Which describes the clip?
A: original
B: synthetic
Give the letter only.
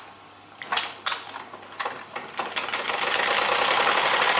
A